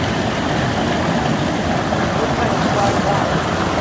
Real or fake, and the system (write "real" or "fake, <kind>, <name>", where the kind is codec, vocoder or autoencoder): real